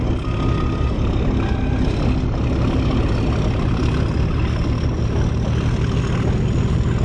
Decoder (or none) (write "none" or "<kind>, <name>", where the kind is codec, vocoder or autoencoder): none